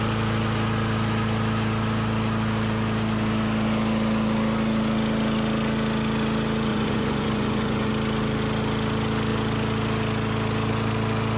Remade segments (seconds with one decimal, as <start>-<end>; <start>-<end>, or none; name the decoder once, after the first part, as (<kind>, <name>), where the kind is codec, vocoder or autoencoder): 6.7-7.9 (vocoder, Vocos)

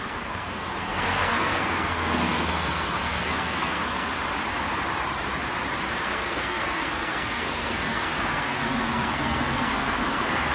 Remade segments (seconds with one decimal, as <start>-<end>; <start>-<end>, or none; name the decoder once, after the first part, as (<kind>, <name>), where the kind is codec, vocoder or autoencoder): 0.0-4.1 (codec, SNAC); 6.0-10.5

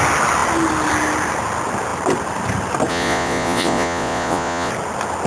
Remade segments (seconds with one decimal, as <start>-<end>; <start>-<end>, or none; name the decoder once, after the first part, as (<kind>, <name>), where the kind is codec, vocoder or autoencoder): 2.9-4.7 (vocoder, Vocos)

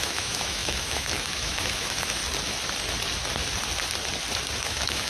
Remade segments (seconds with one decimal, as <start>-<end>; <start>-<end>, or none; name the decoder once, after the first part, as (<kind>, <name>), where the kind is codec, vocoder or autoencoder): 0.0-2.2 (autoencoder, DAC-VAE); 4.6-5.1

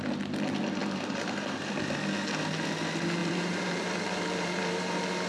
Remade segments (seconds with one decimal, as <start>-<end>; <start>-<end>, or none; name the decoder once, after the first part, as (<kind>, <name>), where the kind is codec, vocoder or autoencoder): 0.8-1.9 (vocoder, BigVGAN v2); 3.2-4.6

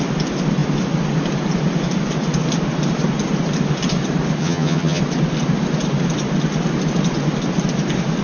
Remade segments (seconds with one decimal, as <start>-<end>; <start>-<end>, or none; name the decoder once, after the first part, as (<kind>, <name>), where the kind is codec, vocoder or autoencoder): 4.4-5.0 (vocoder, HiFi-GAN)